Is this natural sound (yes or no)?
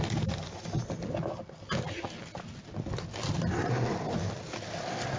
yes